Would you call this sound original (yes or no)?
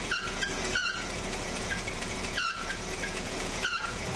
no